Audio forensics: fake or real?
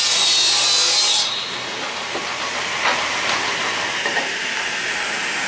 real